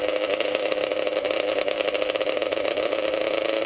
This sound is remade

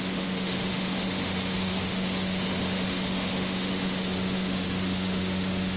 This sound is remade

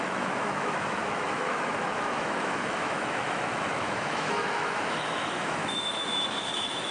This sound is remade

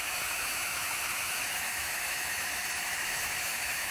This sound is remade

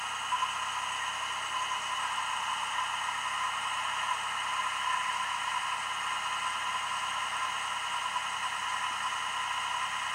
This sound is recorded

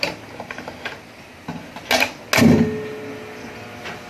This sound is recorded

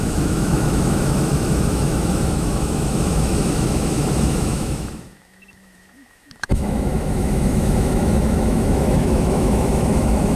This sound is remade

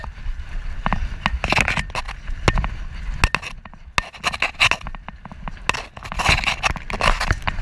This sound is recorded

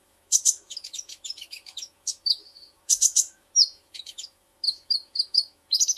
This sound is remade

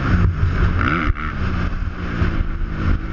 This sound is recorded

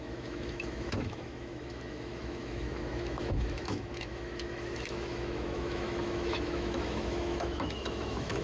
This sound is remade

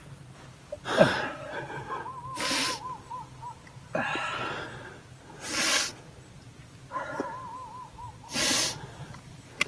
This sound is recorded